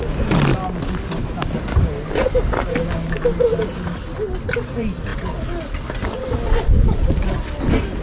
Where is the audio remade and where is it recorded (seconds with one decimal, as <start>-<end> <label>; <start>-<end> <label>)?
0.0-8.0 recorded